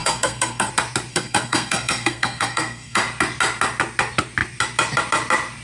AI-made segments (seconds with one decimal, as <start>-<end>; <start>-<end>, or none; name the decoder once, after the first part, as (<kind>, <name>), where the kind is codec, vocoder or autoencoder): 0.0-0.7 (codec, SNAC); 1.1-3.0